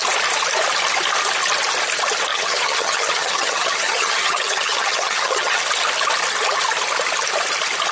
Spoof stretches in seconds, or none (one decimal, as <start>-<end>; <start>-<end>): 2.3-5.6